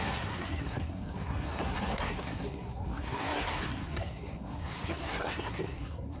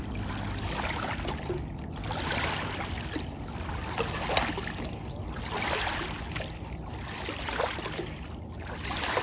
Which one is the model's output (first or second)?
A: first